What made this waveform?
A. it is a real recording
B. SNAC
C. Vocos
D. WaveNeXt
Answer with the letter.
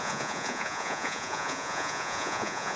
C